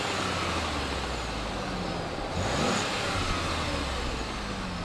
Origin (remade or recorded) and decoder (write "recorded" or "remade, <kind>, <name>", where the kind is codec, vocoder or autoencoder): recorded